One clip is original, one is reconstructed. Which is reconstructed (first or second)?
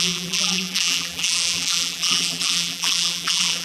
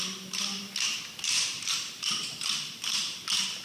first